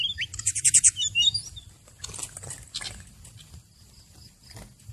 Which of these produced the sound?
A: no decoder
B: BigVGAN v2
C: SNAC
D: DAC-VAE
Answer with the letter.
A